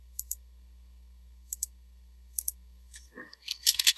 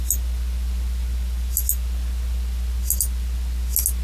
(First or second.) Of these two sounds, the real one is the second